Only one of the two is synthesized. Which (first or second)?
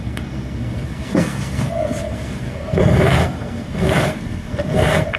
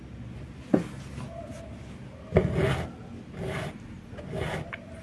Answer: first